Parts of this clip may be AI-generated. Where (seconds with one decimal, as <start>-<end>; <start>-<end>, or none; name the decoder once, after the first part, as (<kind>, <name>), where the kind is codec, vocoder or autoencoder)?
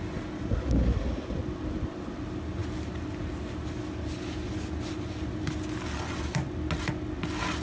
none